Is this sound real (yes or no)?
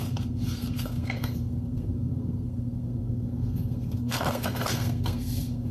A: no